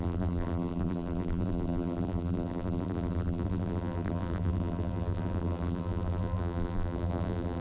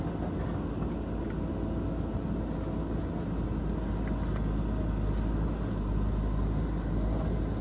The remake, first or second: first